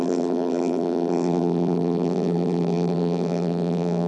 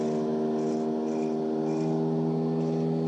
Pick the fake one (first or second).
first